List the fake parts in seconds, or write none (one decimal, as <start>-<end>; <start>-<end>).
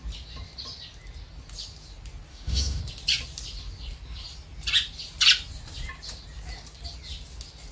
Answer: 2.3-2.8